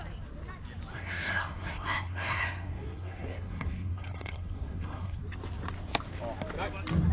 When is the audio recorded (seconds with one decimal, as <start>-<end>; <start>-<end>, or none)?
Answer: 0.0-0.9; 5.2-7.1